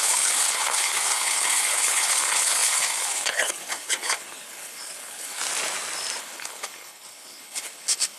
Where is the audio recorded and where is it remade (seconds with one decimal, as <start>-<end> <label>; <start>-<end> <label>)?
0.0-5.4 remade; 5.4-6.2 recorded; 6.2-8.2 remade